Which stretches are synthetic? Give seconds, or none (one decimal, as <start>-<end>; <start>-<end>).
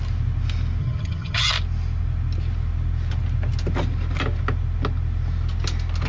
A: 0.8-1.5